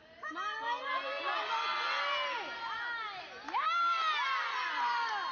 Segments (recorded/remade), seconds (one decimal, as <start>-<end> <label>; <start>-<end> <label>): 0.0-5.3 recorded